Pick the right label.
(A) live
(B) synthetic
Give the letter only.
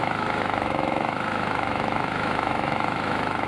B